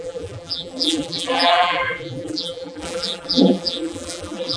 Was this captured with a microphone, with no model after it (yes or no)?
no